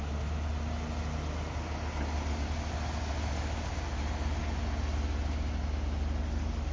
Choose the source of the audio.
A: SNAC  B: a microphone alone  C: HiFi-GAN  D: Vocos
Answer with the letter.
B